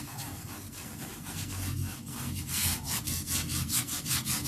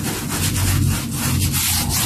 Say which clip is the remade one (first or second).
first